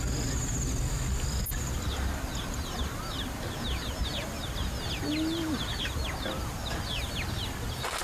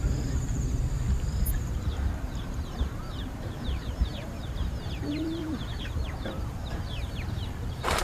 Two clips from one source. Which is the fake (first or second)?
second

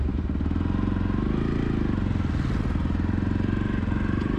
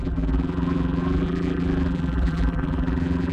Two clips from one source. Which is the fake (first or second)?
second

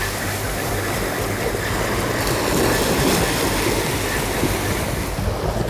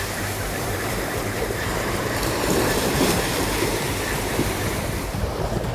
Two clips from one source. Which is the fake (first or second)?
second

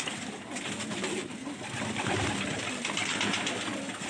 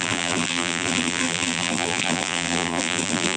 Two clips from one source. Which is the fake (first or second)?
second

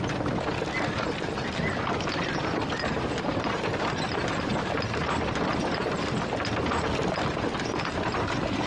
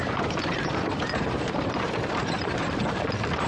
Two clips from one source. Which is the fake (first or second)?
second